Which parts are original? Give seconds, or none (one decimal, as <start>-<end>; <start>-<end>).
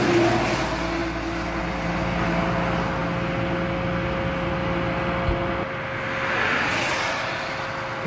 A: 0.0-8.1